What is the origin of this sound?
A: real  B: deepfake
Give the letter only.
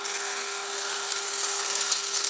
B